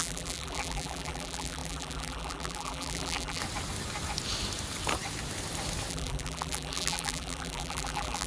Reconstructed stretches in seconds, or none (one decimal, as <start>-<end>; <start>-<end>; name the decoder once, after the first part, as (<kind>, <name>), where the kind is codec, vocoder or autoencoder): 0.0-3.4 (vocoder, BigVGAN v2); 5.9-8.3